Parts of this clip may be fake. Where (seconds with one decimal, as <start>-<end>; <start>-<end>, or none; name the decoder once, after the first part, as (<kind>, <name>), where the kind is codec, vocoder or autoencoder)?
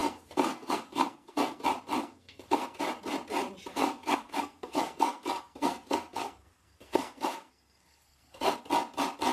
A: 0.0-1.6 (codec, SNAC); 2.0-2.8; 3.7-8.6